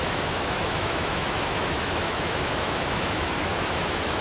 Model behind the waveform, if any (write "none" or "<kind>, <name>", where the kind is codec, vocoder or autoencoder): autoencoder, DAC-VAE